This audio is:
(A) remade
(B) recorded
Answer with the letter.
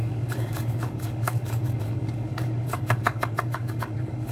A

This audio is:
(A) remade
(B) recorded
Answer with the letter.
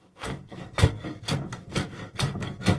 A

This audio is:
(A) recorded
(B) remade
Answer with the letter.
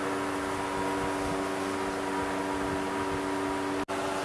A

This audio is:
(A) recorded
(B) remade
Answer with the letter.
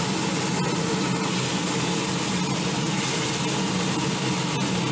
A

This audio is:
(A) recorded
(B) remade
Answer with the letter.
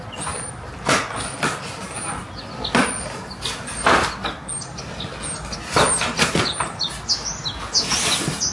A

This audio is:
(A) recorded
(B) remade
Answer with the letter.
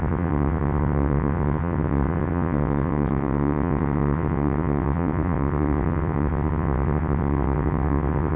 B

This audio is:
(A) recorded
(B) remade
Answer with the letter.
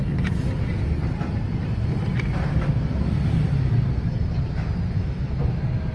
A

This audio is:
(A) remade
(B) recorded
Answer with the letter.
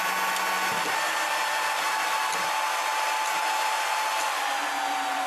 B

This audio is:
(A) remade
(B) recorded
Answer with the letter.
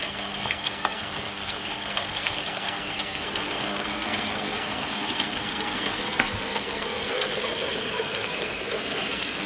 A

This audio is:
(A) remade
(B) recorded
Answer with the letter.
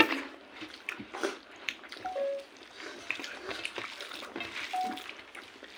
A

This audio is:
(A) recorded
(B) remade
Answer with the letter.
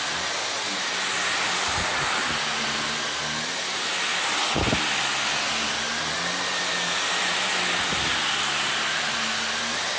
A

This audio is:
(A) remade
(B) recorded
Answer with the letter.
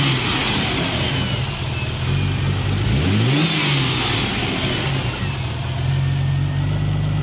B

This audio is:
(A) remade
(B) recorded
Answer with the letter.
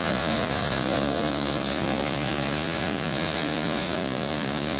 A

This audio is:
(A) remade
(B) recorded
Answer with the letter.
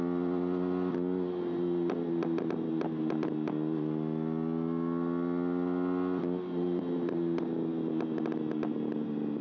B